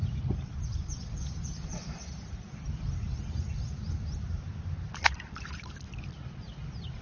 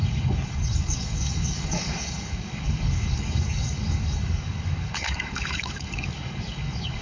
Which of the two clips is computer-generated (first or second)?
second